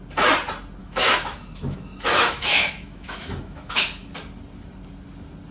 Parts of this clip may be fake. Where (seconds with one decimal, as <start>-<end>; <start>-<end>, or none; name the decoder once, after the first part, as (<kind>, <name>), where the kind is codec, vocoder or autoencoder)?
0.8-4.1 (autoencoder, DAC-VAE)